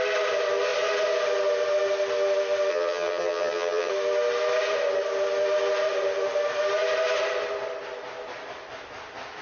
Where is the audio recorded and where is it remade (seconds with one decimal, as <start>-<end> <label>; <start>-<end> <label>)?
0.0-2.7 recorded; 2.7-3.9 remade; 3.9-9.4 recorded